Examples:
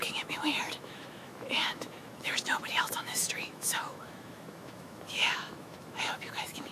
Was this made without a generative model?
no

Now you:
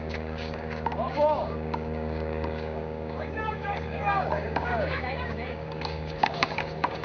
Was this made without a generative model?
no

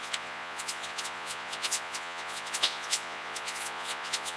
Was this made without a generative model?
no